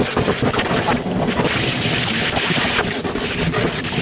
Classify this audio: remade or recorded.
recorded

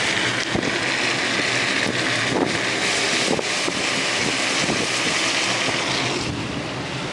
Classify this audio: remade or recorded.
recorded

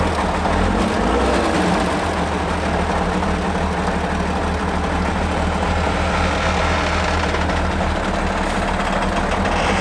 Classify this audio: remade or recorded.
recorded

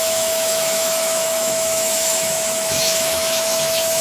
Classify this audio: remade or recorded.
remade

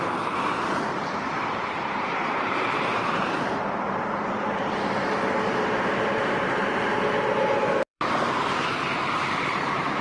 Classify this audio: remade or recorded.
remade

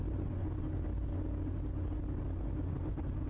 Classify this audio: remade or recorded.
recorded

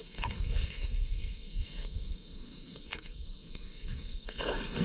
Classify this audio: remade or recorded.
remade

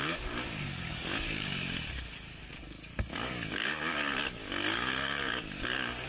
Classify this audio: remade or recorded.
remade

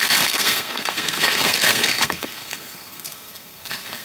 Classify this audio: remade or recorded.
remade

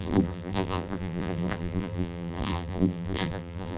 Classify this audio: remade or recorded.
remade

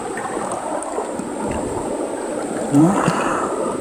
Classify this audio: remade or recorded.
remade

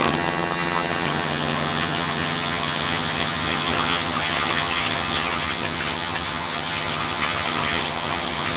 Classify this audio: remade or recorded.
remade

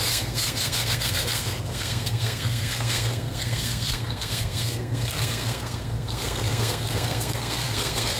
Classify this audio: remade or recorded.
remade